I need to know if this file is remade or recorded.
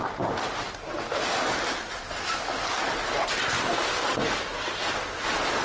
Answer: recorded